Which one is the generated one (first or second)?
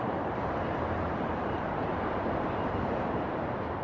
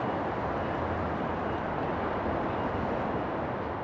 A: first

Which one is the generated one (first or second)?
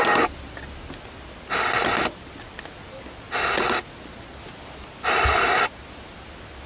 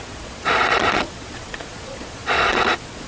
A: second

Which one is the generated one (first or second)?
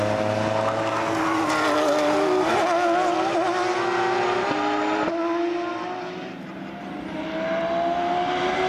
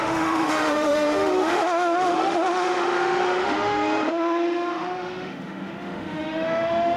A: second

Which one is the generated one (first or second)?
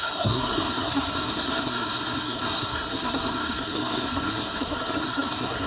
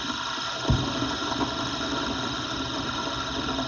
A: first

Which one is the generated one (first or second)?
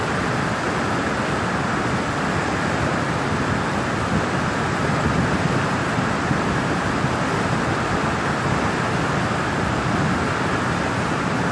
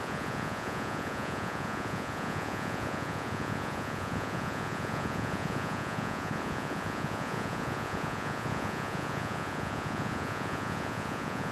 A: second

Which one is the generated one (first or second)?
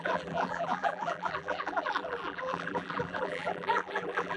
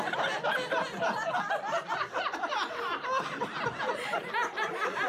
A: first